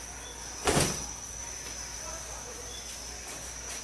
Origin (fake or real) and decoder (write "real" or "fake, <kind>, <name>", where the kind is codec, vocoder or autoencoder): real